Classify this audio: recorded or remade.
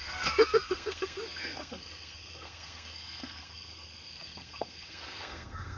remade